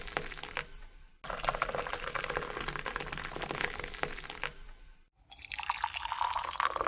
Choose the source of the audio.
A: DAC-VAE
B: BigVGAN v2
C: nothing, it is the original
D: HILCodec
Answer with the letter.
C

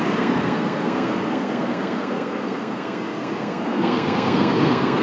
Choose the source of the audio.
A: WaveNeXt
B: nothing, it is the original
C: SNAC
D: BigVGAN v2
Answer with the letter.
C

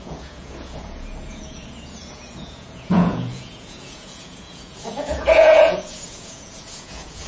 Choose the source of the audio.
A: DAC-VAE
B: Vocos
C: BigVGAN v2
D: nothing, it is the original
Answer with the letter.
B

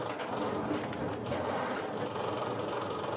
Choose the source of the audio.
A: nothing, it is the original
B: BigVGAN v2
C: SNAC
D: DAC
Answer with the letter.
A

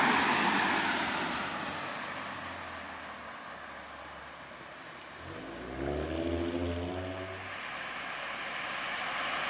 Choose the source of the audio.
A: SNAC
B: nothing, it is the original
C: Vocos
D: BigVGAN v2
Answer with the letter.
B